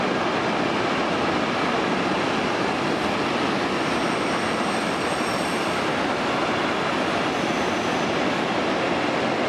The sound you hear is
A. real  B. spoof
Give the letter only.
A